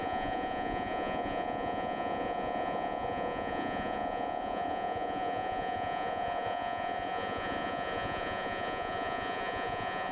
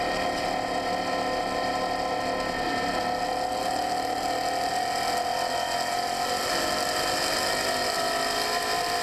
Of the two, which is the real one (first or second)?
second